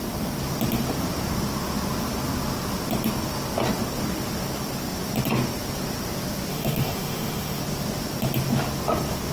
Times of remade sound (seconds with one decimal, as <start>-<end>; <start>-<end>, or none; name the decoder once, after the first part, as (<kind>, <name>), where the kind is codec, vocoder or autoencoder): 6.5-7.6 (autoencoder, DAC-VAE)